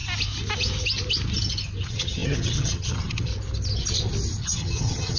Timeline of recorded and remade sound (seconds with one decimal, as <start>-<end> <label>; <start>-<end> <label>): 0.0-1.8 recorded; 1.8-3.3 remade; 3.3-4.4 recorded; 4.4-5.2 remade